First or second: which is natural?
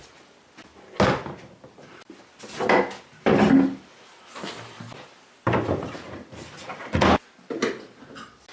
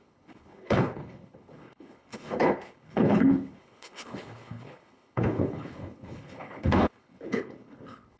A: first